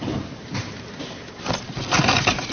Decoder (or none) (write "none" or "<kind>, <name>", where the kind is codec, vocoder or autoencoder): none